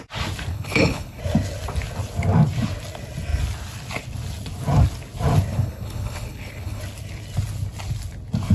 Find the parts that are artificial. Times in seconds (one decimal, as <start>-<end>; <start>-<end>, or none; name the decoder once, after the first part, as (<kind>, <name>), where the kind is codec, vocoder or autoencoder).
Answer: 0.5-1.2 (codec, HILCodec); 5.5-6.8